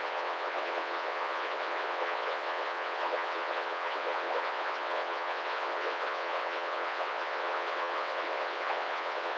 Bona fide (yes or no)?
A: no